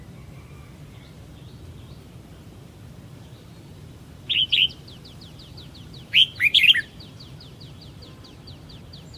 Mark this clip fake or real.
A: fake